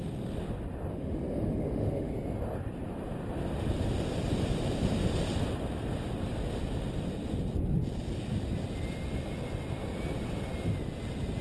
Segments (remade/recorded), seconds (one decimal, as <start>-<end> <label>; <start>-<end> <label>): 0.0-0.9 recorded; 0.9-2.1 remade; 2.1-11.4 recorded